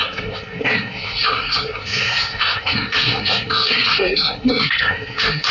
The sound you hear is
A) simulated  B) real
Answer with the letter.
A